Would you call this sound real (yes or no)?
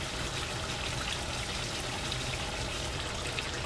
yes